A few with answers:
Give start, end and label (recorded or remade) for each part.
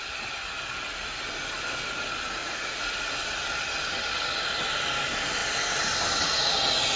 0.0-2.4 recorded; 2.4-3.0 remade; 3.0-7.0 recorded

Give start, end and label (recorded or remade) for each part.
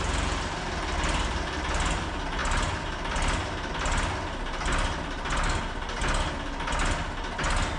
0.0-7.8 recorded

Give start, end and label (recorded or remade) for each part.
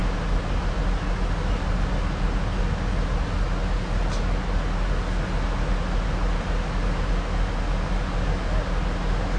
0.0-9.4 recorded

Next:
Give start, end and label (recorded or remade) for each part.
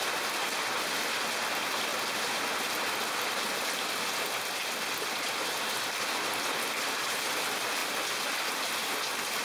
0.0-9.4 recorded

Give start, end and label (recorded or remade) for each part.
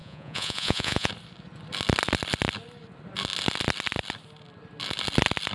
0.0-1.1 remade; 1.1-5.5 recorded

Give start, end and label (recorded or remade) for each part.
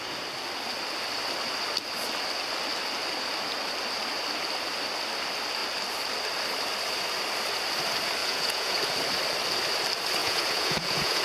0.0-8.2 recorded; 8.2-8.8 remade; 8.8-10.2 recorded; 10.2-11.2 remade